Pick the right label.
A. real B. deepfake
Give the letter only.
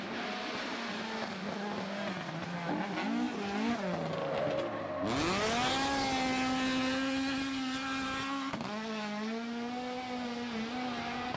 A